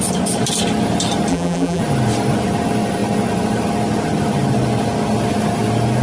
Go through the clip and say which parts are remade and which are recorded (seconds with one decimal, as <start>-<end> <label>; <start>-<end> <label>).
0.0-1.3 recorded; 1.3-1.8 remade; 1.8-6.0 recorded